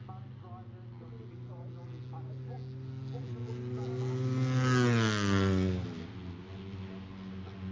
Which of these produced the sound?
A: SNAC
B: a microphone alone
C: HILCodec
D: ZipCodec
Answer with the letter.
B